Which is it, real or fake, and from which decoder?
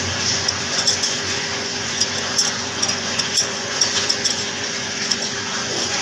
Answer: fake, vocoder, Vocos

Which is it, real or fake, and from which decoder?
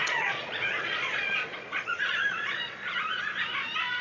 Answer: fake, vocoder, Vocos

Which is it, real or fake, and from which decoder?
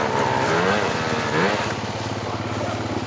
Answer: real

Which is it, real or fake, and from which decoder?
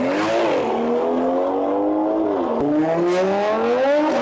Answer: real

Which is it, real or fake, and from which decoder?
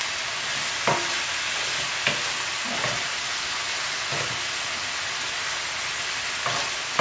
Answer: real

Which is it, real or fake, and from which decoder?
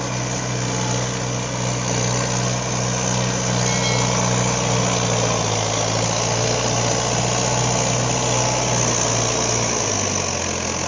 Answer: real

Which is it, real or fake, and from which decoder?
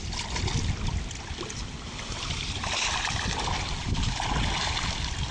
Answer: real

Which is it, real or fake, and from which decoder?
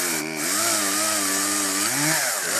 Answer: real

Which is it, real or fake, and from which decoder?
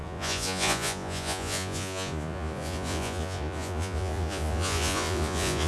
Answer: fake, vocoder, Vocos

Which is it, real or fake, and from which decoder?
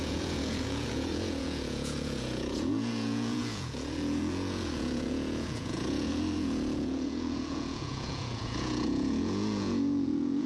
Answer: fake, vocoder, Vocos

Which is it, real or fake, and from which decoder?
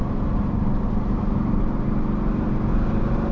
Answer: real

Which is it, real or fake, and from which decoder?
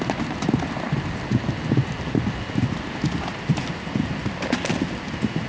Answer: real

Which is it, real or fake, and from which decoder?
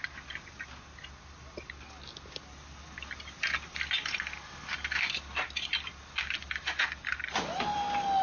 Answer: real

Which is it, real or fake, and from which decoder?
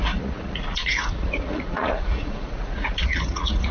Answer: fake, vocoder, Vocos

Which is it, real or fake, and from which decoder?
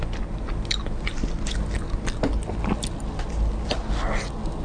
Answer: real